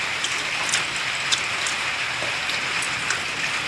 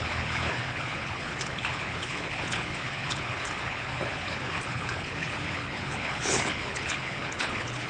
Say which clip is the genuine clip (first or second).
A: first